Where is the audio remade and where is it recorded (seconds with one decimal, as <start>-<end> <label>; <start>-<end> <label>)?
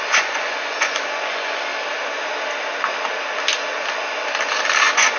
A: 0.0-1.7 remade; 1.7-4.8 recorded; 4.8-5.2 remade